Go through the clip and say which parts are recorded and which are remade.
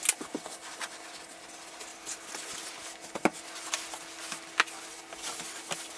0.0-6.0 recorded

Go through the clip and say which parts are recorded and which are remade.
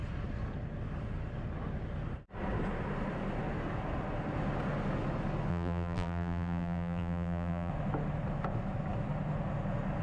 0.0-5.5 recorded; 5.5-7.7 remade; 7.7-10.0 recorded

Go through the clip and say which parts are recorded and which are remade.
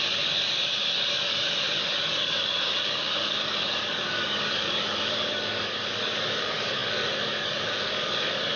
0.0-8.6 remade